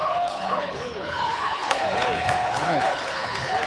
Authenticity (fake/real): fake